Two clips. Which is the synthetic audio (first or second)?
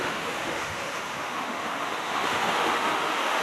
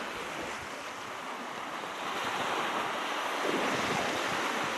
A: first